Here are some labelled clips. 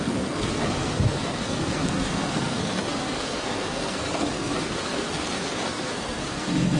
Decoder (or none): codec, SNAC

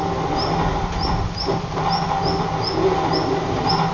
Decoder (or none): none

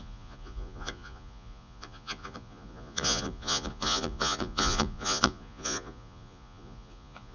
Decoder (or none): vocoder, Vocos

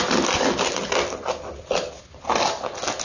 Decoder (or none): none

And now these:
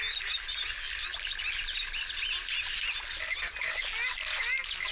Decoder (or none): none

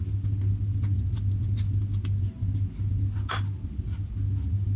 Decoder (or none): none